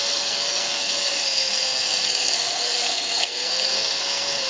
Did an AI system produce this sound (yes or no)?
yes